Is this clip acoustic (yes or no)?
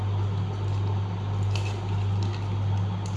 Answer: yes